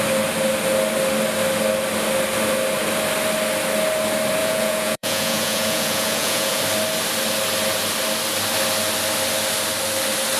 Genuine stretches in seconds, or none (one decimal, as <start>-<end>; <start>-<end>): 0.0-4.4; 6.6-10.4